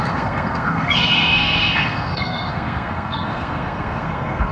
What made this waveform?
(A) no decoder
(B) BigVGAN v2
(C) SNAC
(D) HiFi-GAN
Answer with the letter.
C